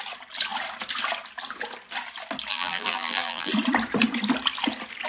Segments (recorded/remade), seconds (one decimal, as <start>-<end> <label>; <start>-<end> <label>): 0.0-2.5 recorded; 2.5-3.5 remade; 3.5-5.1 recorded